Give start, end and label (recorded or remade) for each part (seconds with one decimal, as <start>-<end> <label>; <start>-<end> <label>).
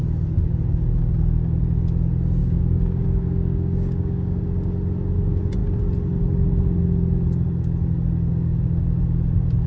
0.0-2.4 recorded; 2.4-4.4 remade; 4.4-9.7 recorded